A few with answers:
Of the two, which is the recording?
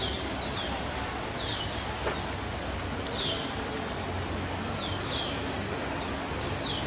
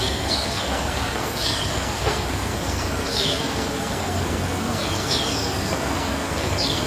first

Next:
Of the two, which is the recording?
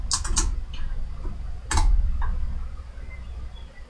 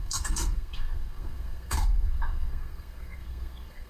first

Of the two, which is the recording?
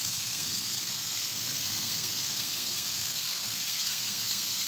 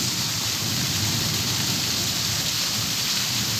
second